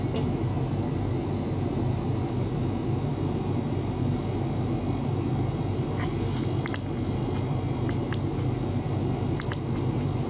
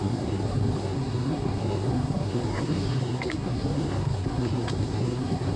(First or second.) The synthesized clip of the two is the second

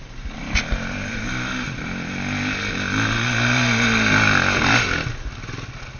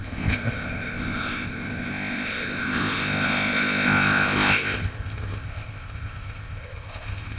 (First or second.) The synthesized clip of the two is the second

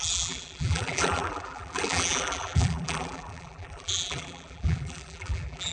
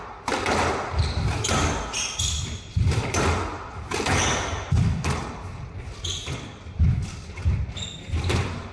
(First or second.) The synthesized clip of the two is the first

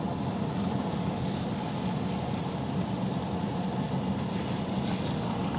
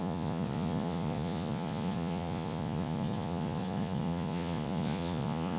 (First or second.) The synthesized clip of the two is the second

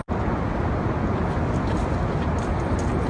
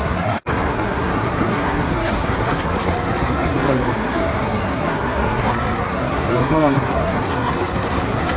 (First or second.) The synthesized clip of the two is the second